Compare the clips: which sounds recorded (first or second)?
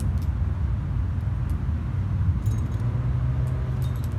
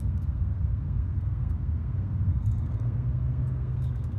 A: first